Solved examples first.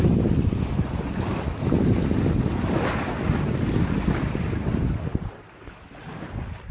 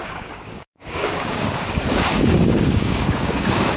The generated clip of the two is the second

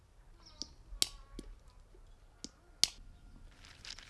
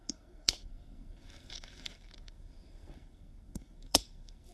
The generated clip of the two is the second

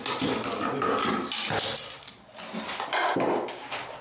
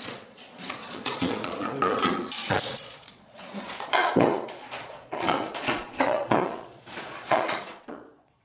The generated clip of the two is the second